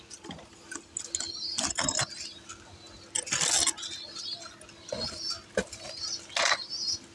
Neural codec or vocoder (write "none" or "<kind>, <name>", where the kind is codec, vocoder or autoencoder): none